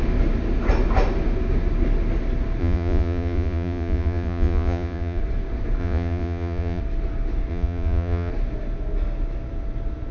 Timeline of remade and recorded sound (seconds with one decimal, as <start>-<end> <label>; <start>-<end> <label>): 0.0-2.6 recorded; 2.6-5.2 remade; 5.2-5.8 recorded; 5.8-6.8 remade; 6.8-7.5 recorded; 7.5-8.3 remade; 8.3-10.1 recorded